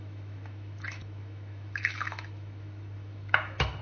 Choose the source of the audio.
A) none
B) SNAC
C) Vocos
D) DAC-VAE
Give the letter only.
D